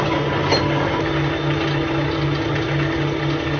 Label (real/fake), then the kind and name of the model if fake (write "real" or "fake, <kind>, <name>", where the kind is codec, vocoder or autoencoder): real